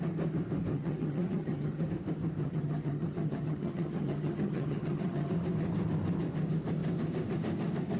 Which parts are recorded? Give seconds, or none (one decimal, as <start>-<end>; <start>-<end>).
0.0-0.7; 1.9-2.4; 5.3-8.0